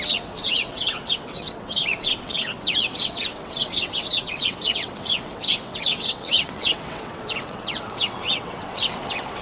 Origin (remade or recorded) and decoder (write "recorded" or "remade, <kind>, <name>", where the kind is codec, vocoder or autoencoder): remade, vocoder, WaveNeXt